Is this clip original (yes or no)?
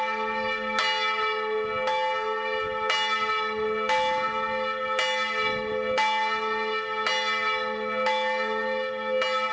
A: yes